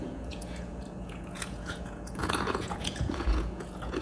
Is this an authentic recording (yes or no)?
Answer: no